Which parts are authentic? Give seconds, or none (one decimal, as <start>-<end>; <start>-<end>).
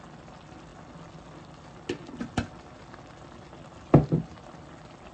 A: 0.0-5.1